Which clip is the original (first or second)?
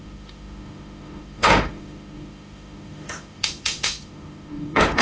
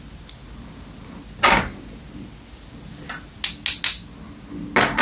second